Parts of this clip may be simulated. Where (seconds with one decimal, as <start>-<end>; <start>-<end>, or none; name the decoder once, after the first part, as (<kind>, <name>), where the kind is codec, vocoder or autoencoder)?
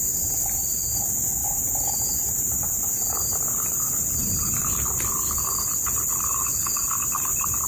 1.4-4.7 (vocoder, BigVGAN v2)